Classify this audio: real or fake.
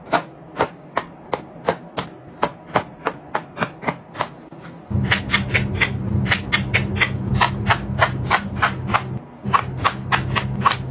real